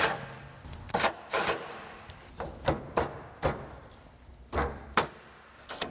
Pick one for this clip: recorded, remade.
remade